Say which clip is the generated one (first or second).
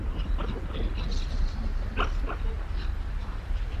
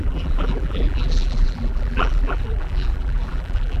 second